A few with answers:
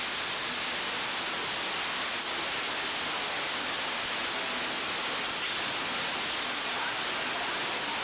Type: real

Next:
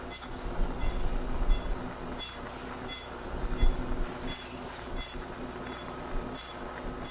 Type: real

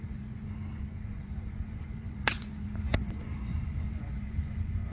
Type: fake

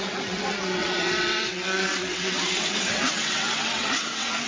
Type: fake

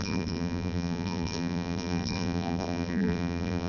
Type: fake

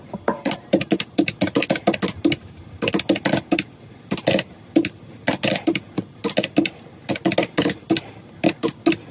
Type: real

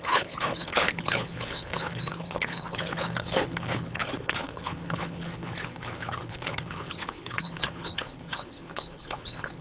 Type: fake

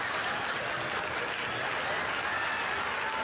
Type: real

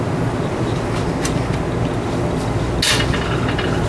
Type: real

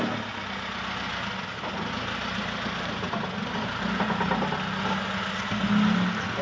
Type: real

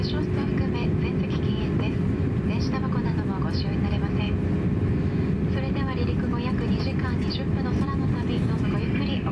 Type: real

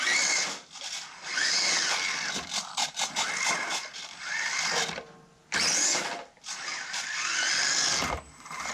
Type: real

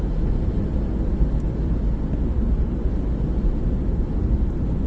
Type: real